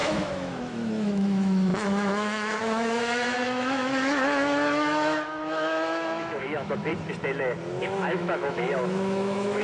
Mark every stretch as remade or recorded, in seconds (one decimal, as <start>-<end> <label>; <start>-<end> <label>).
0.0-6.9 remade; 6.9-7.8 recorded; 7.8-9.6 remade